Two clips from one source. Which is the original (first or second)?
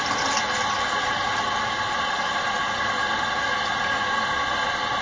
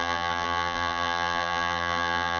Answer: first